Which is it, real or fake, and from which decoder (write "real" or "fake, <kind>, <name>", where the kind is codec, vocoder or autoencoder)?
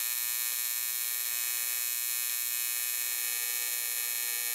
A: real